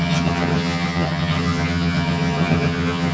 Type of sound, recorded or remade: remade